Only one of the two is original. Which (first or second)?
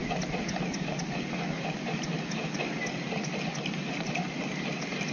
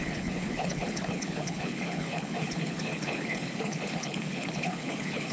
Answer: first